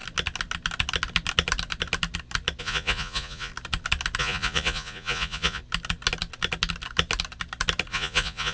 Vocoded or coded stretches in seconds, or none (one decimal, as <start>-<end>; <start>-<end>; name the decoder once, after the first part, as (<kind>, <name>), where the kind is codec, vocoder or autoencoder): 2.6-3.5 (vocoder, Vocos); 4.2-5.6; 7.9-8.5